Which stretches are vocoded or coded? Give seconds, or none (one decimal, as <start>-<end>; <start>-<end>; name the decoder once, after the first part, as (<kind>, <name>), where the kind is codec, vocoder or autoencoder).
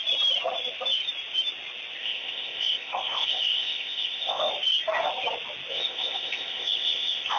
2.0-4.5 (codec, ZipCodec); 5.7-7.4